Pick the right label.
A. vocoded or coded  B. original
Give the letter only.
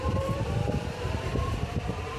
A